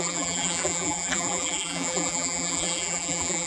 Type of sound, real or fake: fake